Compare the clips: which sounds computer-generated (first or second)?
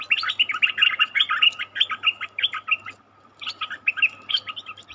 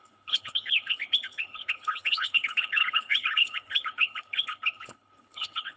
second